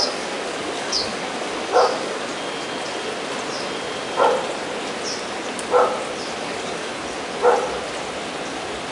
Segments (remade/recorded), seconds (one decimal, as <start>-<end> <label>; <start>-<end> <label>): 0.0-2.3 remade; 2.3-6.4 recorded; 6.4-6.9 remade; 6.9-8.9 recorded